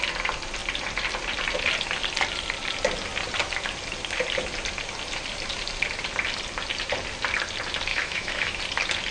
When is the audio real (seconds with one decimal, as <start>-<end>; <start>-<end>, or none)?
0.0-7.9; 8.6-9.1